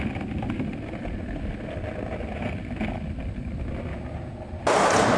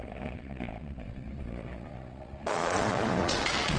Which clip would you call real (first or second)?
first